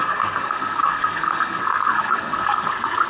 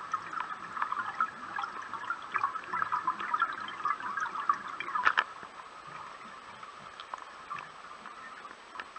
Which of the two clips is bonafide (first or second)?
second